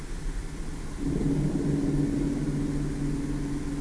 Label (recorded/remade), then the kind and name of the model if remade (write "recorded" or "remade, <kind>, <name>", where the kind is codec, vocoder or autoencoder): recorded